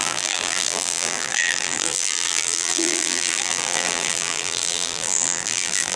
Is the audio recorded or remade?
remade